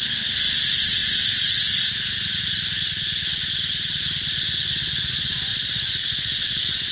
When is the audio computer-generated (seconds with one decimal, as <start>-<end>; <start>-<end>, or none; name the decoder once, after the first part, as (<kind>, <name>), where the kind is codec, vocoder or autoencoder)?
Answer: none